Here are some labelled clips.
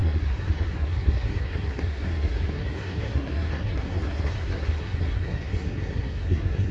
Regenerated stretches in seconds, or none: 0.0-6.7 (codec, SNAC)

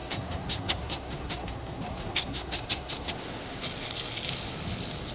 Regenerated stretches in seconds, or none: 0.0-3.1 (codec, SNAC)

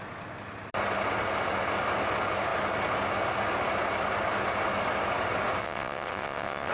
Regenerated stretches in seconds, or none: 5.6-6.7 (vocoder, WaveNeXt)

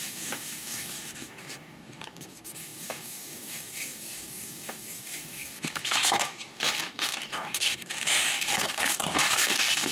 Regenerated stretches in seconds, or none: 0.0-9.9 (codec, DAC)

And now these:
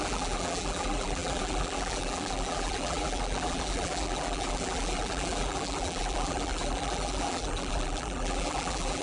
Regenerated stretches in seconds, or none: 0.0-9.0 (vocoder, BigVGAN v2)

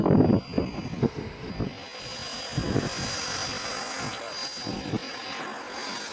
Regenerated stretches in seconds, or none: 1.0-1.5 (autoencoder, DAC-VAE)

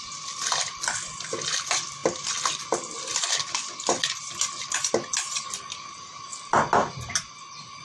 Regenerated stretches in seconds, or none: 6.8-7.8 (vocoder, BigVGAN v2)